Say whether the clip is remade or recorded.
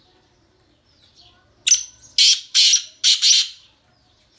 recorded